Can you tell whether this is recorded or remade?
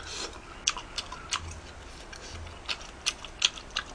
recorded